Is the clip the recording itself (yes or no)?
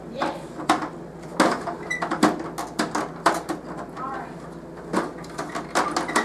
yes